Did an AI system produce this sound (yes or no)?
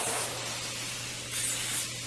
no